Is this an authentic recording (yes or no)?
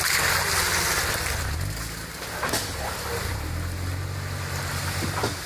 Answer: yes